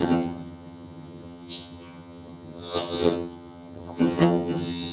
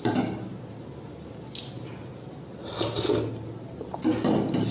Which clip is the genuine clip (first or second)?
second